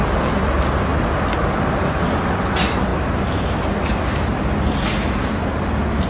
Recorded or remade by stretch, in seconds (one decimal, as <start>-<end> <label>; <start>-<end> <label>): 0.0-6.1 recorded